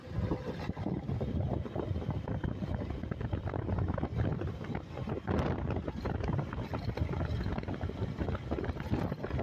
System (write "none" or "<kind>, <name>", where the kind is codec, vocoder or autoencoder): none